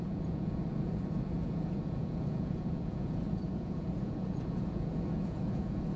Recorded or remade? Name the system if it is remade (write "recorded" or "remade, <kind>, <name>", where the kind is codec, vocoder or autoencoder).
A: remade, vocoder, Vocos